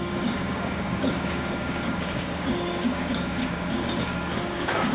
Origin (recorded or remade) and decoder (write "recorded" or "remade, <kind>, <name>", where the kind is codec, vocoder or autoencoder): remade, codec, DAC